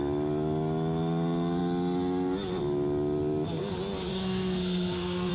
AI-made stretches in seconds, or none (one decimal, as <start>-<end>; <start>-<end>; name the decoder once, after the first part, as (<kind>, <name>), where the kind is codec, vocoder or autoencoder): 4.1-5.3 (codec, SNAC)